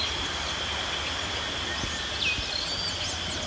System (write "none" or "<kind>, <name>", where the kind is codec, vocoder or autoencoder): none